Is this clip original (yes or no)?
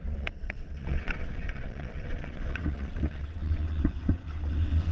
no